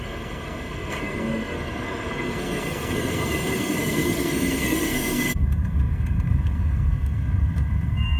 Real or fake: fake